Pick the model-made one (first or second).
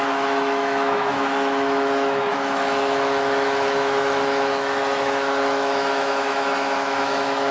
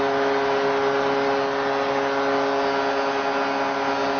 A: first